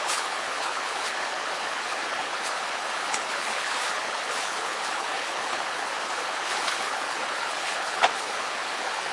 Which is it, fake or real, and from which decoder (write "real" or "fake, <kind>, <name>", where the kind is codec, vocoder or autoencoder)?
fake, codec, HILCodec